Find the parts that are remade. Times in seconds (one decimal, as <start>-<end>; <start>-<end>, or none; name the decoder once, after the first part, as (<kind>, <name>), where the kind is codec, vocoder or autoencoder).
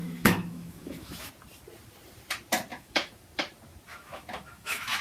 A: 0.0-1.3 (autoencoder, DAC-VAE); 2.7-3.2; 3.9-5.0